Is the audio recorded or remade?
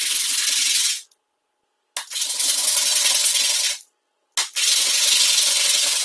recorded